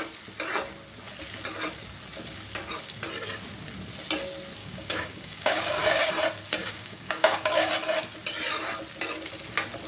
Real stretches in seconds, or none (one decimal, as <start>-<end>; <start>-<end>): 0.0-4.6; 6.1-6.6; 7.7-9.9